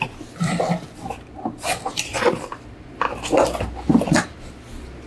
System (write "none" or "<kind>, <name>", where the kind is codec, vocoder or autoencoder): none